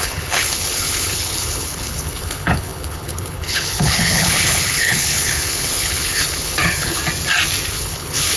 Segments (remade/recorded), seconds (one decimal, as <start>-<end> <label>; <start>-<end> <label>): 0.0-7.0 remade; 7.0-7.7 recorded; 7.7-8.4 remade